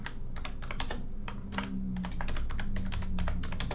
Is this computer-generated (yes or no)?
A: no